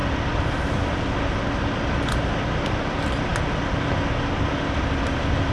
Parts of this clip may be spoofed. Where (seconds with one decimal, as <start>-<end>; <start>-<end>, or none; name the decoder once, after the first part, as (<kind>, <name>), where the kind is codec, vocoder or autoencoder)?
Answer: none